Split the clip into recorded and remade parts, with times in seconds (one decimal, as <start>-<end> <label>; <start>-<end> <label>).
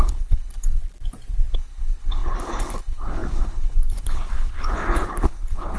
0.0-0.8 remade; 0.8-1.5 recorded; 1.5-5.8 remade